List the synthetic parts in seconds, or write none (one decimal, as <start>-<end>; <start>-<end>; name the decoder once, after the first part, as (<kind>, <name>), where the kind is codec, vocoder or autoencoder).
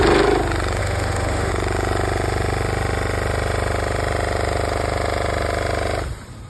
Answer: 0.8-1.5 (autoencoder, DAC-VAE)